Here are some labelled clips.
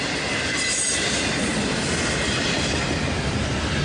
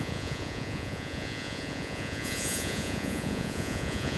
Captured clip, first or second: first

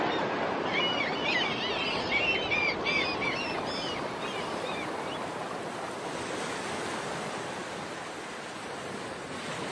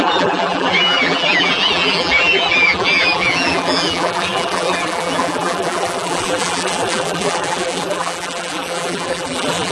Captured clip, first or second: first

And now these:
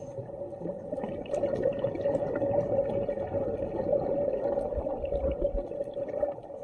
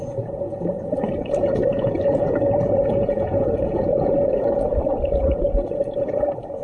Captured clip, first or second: first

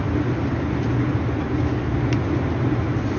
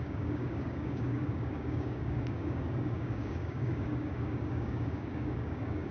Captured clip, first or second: first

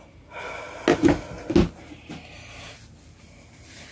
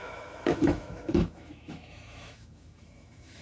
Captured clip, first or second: first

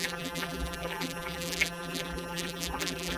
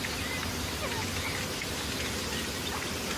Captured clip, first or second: second